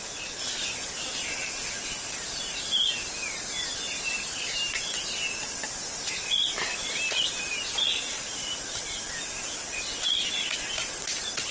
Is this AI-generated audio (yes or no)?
no